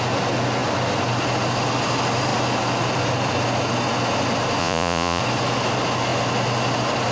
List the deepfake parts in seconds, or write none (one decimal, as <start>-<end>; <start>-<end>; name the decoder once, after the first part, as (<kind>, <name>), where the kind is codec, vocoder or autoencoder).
4.6-5.2 (vocoder, Vocos)